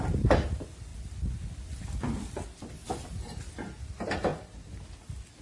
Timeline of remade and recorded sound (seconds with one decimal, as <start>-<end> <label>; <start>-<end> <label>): 0.0-5.4 recorded